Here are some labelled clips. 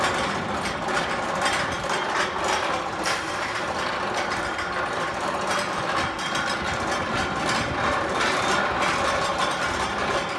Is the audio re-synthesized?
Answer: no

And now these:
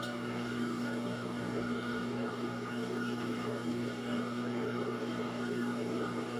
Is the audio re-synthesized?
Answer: yes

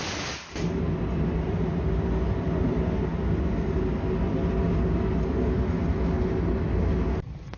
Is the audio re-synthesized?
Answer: no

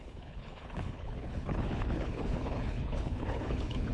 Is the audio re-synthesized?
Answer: yes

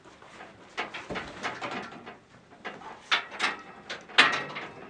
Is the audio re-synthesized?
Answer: no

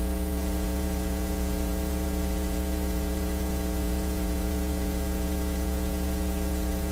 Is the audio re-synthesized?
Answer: yes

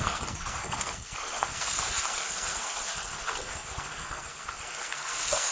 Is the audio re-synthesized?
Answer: yes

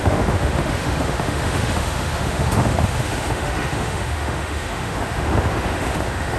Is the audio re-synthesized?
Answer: yes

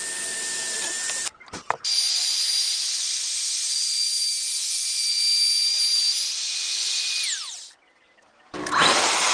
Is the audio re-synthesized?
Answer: no